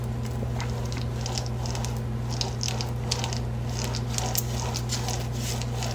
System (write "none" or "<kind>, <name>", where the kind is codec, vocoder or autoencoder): none